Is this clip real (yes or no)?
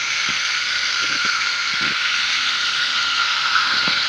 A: no